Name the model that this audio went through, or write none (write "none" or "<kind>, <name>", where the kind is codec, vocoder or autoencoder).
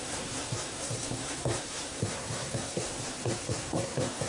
codec, SNAC